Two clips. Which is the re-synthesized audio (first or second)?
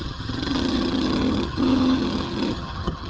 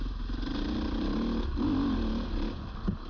first